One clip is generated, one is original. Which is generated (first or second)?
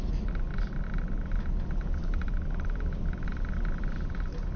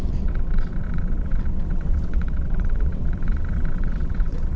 second